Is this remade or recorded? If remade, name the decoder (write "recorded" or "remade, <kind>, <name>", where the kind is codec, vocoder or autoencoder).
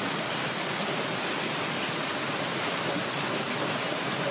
recorded